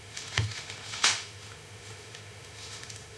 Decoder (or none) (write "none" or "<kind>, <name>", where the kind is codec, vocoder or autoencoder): autoencoder, DAC-VAE